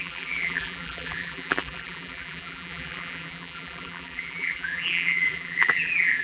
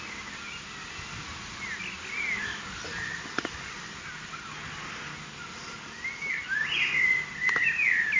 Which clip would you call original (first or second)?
second